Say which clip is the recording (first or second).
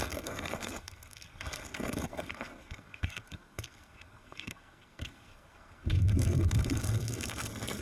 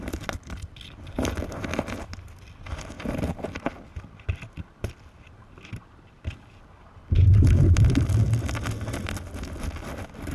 second